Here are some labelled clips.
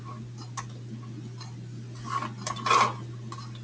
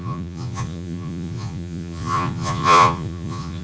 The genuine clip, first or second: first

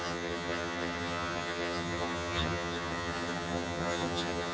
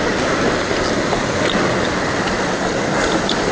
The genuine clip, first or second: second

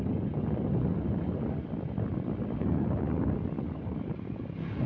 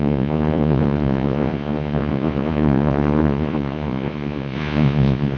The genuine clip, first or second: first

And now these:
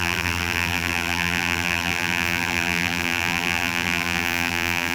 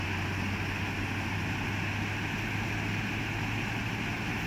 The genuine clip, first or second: second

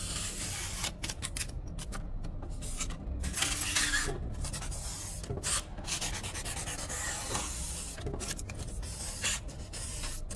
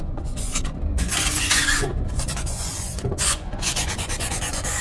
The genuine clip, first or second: first